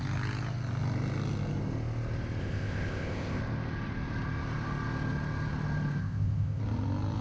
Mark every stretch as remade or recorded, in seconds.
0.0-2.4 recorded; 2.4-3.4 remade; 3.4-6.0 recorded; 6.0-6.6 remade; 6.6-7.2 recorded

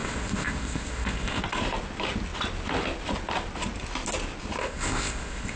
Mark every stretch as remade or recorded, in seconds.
0.0-1.4 remade; 1.4-4.6 recorded; 4.6-5.6 remade

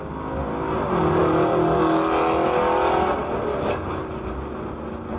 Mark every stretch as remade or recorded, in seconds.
0.0-5.2 recorded

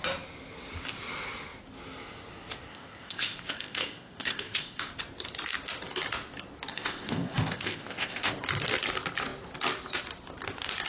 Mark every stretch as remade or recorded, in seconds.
0.0-2.7 recorded; 2.7-4.9 remade; 4.9-6.7 recorded; 6.7-8.3 remade; 8.3-10.9 recorded